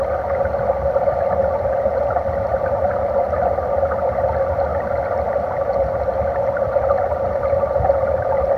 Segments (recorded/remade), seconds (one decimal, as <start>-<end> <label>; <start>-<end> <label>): 0.0-8.6 recorded